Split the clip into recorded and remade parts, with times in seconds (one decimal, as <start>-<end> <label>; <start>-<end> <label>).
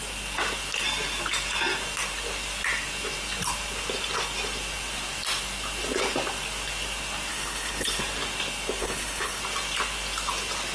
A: 0.0-7.3 recorded; 7.3-8.0 remade; 8.0-8.8 recorded; 8.8-9.4 remade; 9.4-10.7 recorded